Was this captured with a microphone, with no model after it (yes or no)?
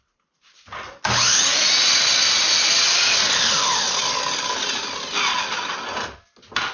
yes